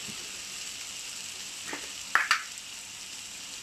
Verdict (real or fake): real